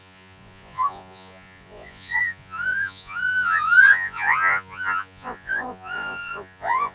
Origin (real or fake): fake